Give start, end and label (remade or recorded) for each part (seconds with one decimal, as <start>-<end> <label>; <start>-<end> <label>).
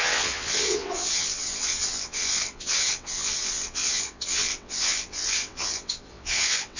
0.0-6.8 remade